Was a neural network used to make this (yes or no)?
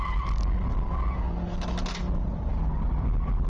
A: no